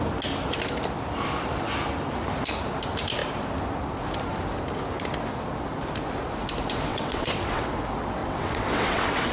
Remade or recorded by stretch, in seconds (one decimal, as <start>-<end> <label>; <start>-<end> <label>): 0.0-6.9 recorded; 6.9-7.7 remade; 7.7-8.2 recorded; 8.2-9.3 remade